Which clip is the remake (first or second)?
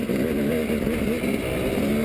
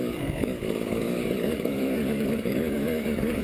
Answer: second